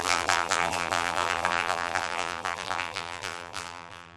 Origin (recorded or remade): remade